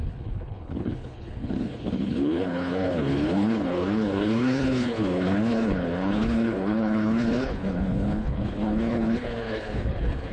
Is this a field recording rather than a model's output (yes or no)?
no